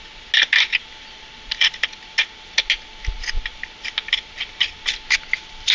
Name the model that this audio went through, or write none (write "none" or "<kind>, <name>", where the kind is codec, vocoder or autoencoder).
none